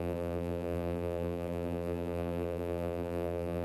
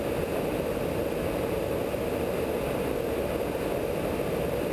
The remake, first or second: first